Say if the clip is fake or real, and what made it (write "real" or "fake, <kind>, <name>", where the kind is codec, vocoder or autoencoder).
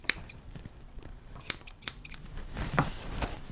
fake, vocoder, BigVGAN v2